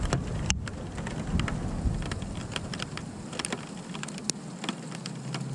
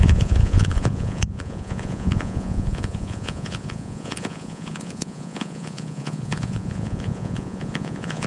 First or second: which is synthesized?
second